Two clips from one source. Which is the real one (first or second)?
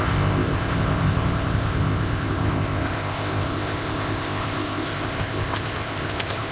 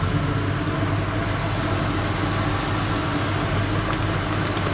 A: second